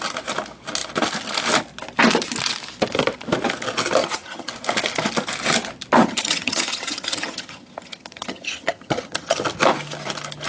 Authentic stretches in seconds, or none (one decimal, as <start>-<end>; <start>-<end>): 0.0-4.0; 4.5-6.0; 9.4-10.5